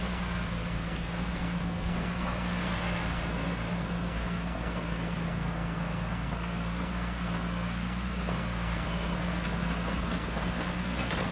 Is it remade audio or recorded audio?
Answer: remade